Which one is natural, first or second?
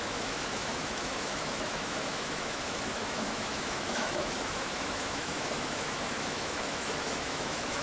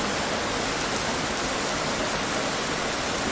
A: second